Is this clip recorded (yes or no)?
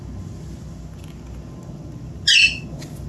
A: yes